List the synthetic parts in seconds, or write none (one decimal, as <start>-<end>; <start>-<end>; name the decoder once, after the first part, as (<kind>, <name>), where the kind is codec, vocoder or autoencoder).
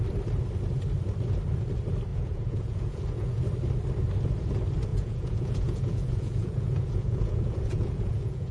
2.1-3.4 (vocoder, Vocos); 4.9-8.5